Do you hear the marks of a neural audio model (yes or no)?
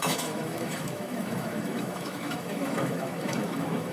yes